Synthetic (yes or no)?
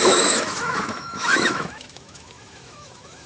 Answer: yes